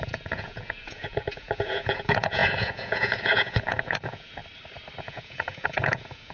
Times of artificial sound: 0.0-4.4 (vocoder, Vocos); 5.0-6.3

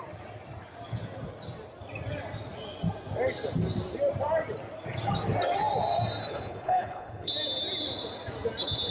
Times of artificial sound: 6.2-7.3 (codec, HILCodec)

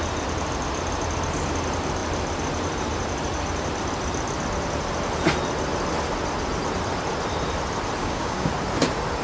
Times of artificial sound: 8.0-8.5 (codec, DAC)